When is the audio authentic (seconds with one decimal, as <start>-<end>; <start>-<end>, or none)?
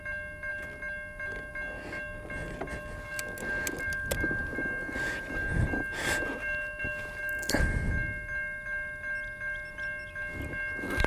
0.0-11.1